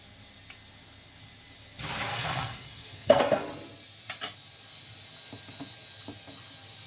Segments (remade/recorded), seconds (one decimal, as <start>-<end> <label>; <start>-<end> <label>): 0.0-2.1 recorded; 2.1-3.2 remade; 3.2-6.9 recorded